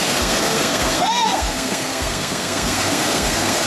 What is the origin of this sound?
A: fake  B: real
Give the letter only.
A